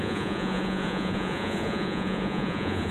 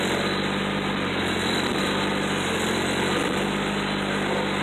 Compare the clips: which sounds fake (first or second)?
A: first